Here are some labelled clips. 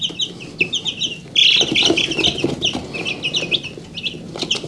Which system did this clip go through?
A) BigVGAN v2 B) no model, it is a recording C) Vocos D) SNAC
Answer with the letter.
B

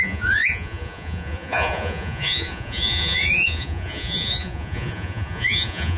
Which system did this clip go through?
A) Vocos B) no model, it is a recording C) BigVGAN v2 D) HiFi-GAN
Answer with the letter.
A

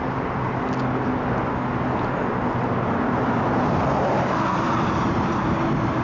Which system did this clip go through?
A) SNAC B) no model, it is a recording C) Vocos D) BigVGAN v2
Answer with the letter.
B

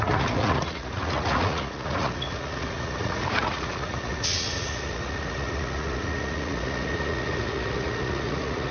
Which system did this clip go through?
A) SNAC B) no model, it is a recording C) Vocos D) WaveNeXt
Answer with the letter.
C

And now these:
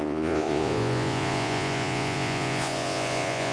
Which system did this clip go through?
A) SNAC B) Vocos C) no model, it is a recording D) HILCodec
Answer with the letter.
B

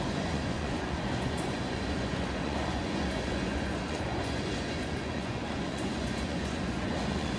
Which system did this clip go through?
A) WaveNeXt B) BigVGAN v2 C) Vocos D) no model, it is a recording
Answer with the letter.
C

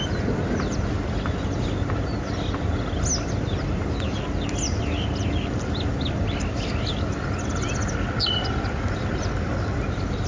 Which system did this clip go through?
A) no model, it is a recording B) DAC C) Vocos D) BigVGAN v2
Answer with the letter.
A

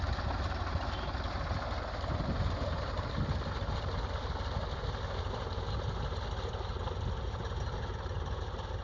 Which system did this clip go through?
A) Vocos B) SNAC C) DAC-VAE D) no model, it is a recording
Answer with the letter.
D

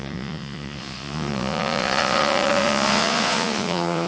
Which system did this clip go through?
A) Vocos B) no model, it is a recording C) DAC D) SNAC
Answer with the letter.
A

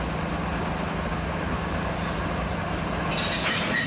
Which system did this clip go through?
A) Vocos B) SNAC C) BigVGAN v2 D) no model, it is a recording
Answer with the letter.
D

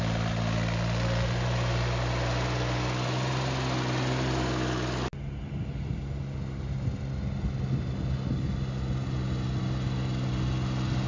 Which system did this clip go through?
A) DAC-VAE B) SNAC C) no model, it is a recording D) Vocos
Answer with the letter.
C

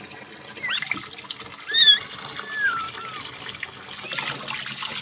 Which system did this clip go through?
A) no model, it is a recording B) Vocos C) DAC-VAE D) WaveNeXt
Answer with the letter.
A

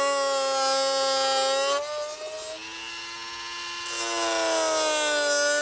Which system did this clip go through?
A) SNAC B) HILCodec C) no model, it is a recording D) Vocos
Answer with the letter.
C